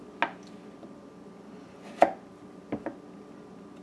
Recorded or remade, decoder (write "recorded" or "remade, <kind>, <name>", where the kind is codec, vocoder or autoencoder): recorded